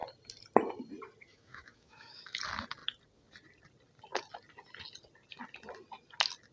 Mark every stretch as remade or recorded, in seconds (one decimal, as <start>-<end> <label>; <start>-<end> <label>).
0.0-1.3 recorded; 1.3-2.4 remade; 2.4-6.5 recorded